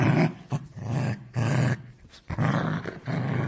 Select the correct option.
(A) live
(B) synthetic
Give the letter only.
B